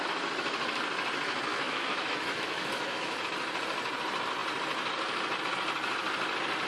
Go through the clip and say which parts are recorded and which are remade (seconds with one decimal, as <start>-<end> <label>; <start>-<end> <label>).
0.0-1.5 recorded; 1.5-3.2 remade; 3.2-6.7 recorded